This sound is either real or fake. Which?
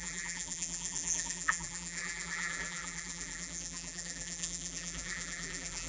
fake